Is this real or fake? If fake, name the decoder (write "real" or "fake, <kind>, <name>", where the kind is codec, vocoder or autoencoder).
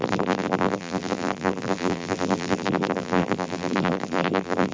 fake, vocoder, BigVGAN v2